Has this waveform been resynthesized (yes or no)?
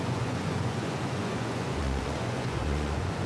yes